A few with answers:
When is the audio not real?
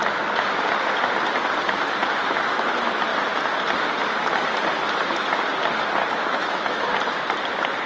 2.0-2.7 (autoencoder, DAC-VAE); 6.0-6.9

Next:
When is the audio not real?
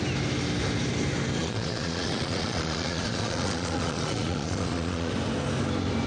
1.4-5.1 (vocoder, Vocos)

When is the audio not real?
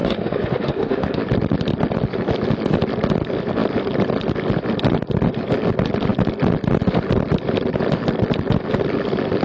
0.0-1.2 (autoencoder, DAC-VAE)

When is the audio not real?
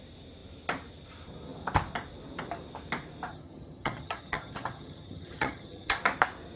3.3-6.0 (vocoder, HiFi-GAN)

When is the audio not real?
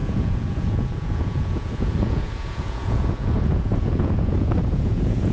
0.0-5.3 (vocoder, Vocos)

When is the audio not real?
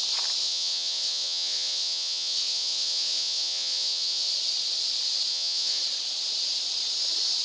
0.4-4.3 (vocoder, WaveNeXt); 5.3-5.8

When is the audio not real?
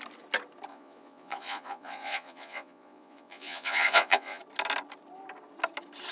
0.7-4.4 (vocoder, Vocos)